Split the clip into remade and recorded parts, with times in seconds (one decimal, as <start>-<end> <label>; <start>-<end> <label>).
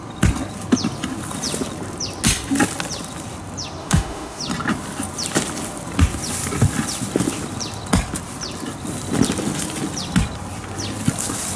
0.0-3.8 recorded; 3.8-4.4 remade; 4.4-11.6 recorded